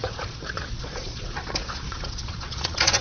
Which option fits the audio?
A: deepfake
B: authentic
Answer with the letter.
A